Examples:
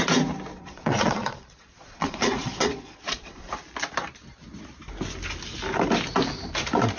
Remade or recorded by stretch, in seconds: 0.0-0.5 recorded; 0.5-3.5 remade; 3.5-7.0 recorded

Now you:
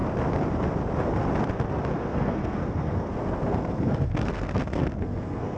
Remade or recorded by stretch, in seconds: 0.0-2.0 recorded; 2.0-5.6 remade

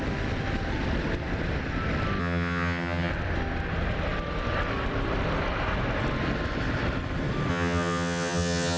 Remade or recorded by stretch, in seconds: 0.0-2.2 recorded; 2.2-3.1 remade; 3.1-7.5 recorded; 7.5-8.8 remade

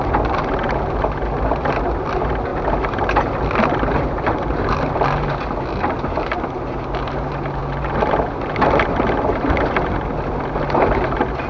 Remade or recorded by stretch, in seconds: 0.0-11.5 recorded